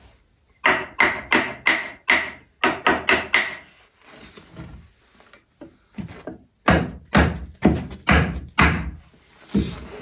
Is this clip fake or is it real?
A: real